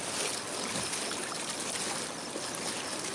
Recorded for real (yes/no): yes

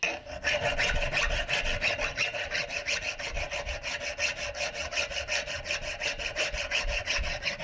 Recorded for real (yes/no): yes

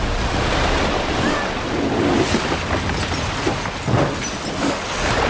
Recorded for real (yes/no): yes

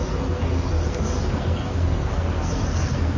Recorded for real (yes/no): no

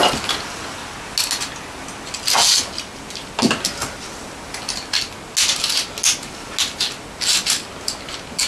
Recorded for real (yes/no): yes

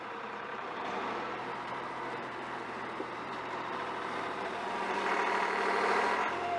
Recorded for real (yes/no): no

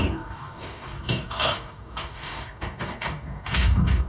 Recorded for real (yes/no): no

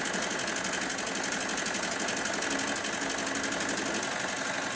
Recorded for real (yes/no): yes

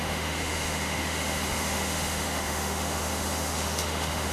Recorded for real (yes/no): no